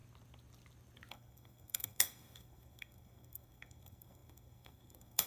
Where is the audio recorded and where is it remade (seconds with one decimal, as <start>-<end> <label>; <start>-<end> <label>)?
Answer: 0.0-1.1 recorded; 1.1-5.3 remade